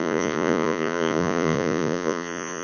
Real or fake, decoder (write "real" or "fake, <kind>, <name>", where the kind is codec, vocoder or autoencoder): fake, vocoder, Vocos